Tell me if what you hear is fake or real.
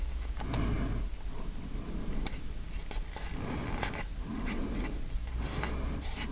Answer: real